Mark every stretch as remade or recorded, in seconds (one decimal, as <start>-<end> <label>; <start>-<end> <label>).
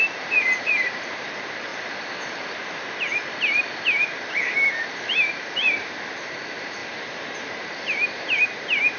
0.0-1.7 remade; 1.7-4.3 recorded; 4.3-9.0 remade